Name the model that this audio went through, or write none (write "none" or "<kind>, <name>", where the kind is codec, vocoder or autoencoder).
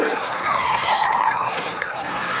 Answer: codec, SNAC